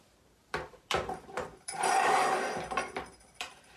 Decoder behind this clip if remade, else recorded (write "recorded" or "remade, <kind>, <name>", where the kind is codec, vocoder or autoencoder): remade, vocoder, BigVGAN v2